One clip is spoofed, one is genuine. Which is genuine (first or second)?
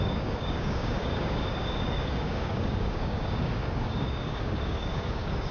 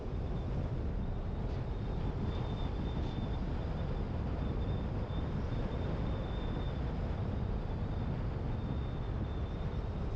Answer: second